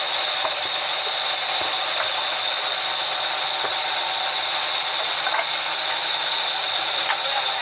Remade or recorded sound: recorded